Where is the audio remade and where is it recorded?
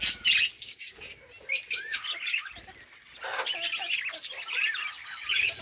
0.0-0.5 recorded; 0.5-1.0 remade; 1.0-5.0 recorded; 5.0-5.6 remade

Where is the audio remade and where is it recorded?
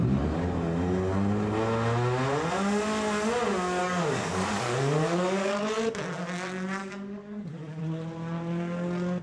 0.0-3.8 recorded; 3.8-5.5 remade; 5.5-6.8 recorded; 6.8-7.8 remade; 7.8-9.2 recorded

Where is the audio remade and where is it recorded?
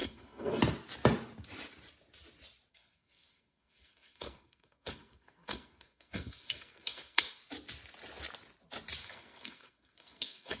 0.0-0.6 remade; 0.6-2.7 recorded; 2.7-7.4 remade; 7.4-9.0 recorded; 9.0-10.6 remade